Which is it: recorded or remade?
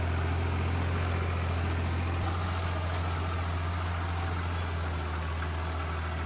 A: recorded